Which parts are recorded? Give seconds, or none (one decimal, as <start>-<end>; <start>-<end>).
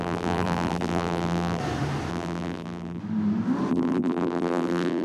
1.6-2.1; 3.0-3.7